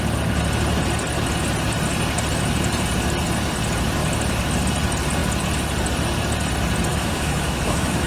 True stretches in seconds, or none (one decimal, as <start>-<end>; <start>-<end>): 0.0-6.9